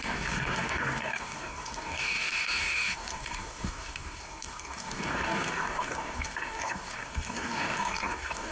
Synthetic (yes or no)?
yes